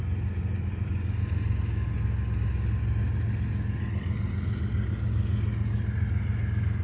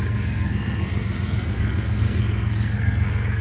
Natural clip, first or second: first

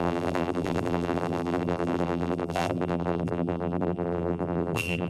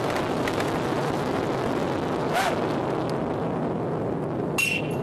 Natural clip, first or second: second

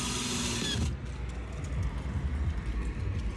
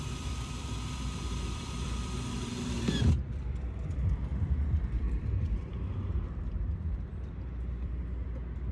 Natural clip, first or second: first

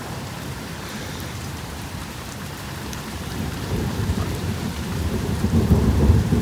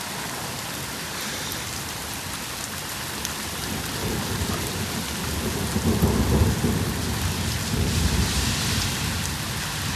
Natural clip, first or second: second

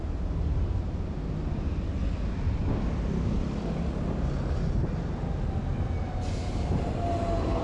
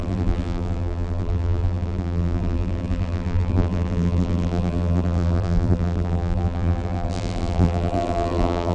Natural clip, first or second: first